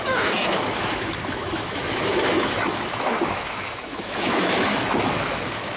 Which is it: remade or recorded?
remade